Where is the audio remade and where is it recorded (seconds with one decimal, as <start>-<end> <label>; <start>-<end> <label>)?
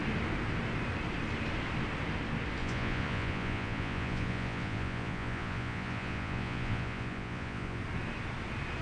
0.0-2.6 recorded; 2.6-7.8 remade; 7.8-8.8 recorded